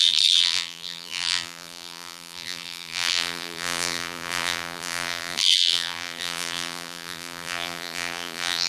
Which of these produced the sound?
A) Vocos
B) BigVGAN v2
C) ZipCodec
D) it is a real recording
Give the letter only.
B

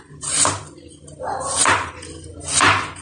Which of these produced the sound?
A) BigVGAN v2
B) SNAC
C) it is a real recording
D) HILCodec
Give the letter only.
C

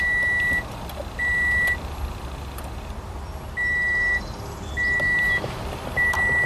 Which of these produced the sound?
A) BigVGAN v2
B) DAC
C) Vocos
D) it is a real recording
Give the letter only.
D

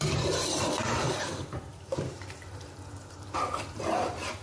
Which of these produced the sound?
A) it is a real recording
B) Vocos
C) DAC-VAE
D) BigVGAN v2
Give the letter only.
D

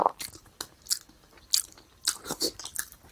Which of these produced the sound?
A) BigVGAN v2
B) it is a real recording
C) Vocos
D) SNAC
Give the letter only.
B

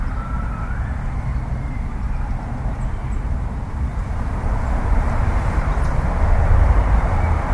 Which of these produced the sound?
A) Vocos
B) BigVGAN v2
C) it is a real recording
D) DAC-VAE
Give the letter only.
B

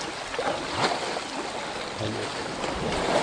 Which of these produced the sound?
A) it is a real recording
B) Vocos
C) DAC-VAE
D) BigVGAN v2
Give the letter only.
A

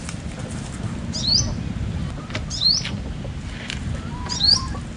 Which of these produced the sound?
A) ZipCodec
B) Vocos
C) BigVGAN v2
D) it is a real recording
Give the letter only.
D